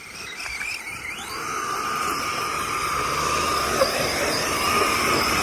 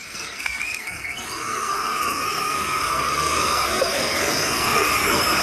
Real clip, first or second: first